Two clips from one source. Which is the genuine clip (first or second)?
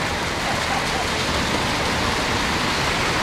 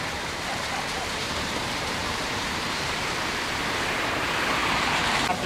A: first